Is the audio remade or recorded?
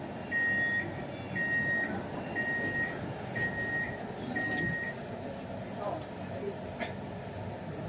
recorded